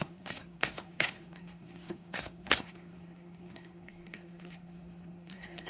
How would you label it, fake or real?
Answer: fake